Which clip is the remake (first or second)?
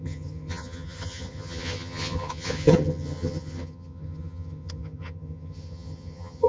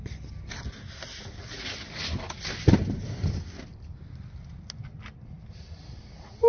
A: first